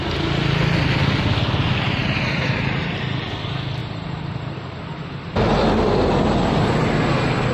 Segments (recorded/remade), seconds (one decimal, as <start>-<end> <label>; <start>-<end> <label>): 0.0-2.0 recorded; 2.0-3.0 remade; 3.0-3.8 recorded; 3.8-5.0 remade; 5.0-7.5 recorded